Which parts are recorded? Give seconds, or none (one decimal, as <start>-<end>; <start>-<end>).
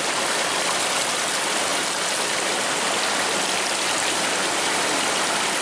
0.0-5.6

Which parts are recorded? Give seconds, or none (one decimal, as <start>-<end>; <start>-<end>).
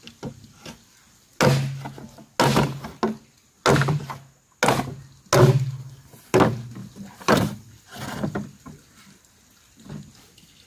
0.0-6.8; 9.2-10.7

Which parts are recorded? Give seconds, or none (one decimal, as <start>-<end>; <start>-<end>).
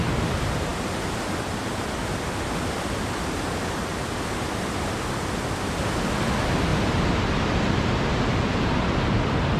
0.0-9.6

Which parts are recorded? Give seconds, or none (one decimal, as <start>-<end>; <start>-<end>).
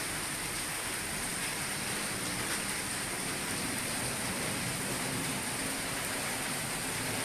0.0-7.2